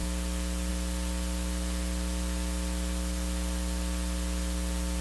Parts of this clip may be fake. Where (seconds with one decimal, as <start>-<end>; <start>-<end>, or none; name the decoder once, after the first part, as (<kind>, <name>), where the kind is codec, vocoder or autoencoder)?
none